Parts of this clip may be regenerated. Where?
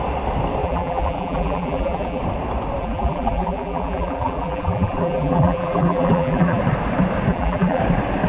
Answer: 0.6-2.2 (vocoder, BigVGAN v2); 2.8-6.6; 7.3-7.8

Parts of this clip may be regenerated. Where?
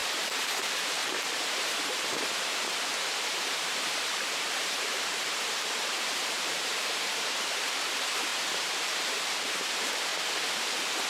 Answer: 0.0-10.1 (vocoder, BigVGAN v2)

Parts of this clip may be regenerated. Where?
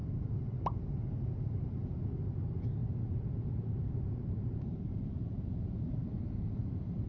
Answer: 2.8-7.1 (vocoder, BigVGAN v2)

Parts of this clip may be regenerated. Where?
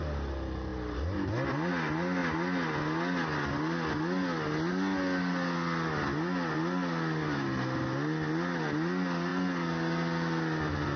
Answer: none